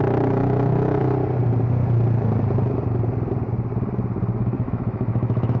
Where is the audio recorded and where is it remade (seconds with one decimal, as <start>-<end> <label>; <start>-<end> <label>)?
0.0-1.0 remade; 1.0-4.4 recorded; 4.4-5.6 remade